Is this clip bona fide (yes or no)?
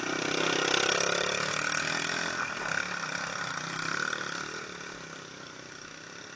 yes